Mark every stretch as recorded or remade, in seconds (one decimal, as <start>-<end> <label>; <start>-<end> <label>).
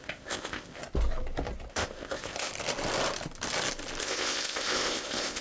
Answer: 0.0-0.8 remade; 0.8-1.7 recorded; 1.7-2.5 remade; 2.5-4.0 recorded; 4.0-5.4 remade